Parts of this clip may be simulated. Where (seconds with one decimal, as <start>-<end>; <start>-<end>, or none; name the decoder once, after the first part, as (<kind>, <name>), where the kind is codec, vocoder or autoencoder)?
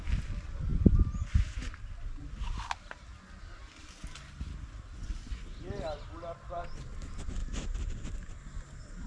none